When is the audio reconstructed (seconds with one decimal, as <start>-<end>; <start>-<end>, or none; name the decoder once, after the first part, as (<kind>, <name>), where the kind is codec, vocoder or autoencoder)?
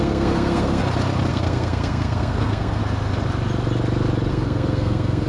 0.0-0.8 (codec, SNAC); 1.3-2.8; 4.3-5.3